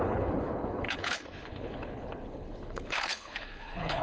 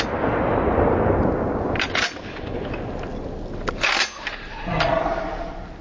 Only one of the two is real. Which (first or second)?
second